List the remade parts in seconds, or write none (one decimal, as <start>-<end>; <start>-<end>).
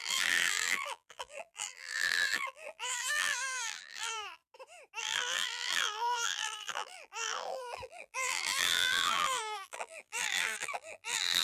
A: 0.0-4.4; 5.0-11.4